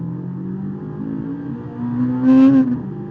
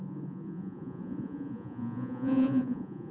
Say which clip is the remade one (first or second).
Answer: second